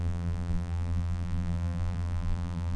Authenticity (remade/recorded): remade